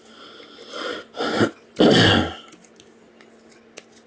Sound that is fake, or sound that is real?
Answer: real